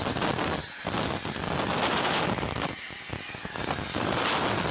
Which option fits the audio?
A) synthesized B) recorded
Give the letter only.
B